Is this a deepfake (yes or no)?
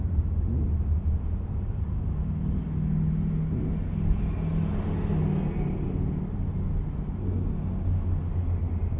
no